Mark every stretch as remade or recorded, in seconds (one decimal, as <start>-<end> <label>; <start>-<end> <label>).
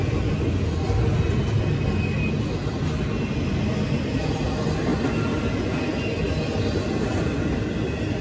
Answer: 0.0-8.2 recorded